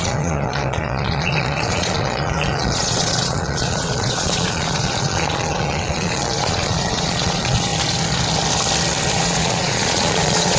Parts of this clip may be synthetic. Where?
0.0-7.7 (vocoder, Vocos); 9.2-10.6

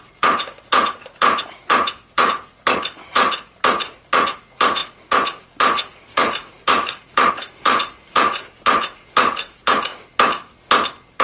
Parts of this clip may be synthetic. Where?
0.0-9.9 (vocoder, Vocos)